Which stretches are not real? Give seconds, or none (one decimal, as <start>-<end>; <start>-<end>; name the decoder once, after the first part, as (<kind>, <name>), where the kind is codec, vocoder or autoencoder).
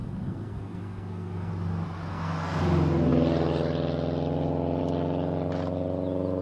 0.0-1.5 (codec, SNAC); 2.1-2.6